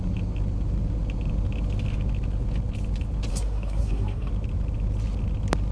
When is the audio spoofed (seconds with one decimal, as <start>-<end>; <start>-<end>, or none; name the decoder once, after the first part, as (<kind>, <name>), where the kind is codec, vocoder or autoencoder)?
3.3-4.3 (codec, SNAC)